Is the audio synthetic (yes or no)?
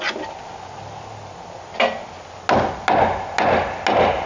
no